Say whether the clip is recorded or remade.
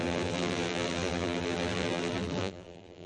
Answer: remade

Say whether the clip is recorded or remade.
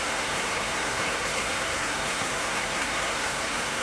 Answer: remade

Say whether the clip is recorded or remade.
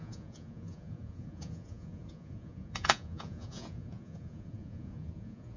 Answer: remade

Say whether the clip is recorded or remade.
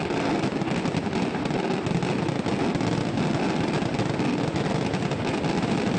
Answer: recorded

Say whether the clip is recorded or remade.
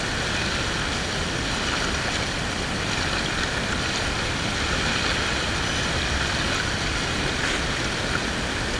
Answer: recorded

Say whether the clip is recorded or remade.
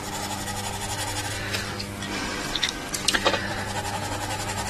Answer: recorded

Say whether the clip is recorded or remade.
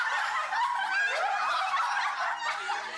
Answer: recorded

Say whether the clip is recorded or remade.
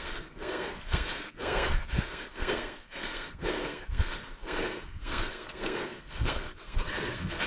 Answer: remade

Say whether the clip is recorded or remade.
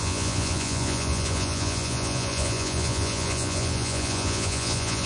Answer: remade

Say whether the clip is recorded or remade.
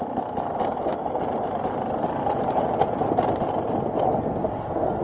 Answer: remade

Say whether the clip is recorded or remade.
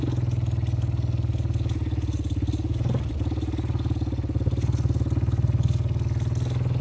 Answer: recorded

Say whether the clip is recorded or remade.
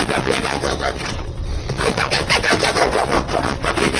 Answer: remade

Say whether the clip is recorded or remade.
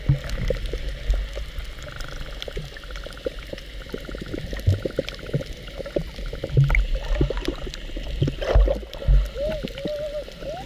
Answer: recorded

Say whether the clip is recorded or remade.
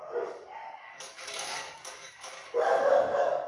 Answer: remade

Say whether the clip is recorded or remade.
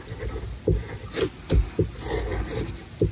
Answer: recorded